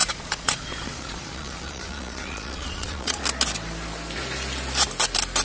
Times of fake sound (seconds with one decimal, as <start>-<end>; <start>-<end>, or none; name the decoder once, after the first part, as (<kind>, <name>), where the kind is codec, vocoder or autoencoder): 0.0-3.2 (vocoder, Vocos)